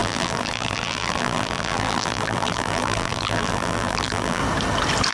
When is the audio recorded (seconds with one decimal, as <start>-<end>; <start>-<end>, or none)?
4.4-5.1